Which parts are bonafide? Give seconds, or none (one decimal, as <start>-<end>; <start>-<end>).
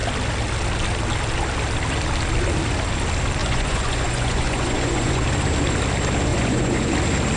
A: 0.0-3.4; 5.2-6.3; 6.9-7.4